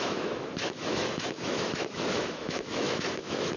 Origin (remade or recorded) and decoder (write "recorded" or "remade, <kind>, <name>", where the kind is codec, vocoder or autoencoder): remade, autoencoder, DAC-VAE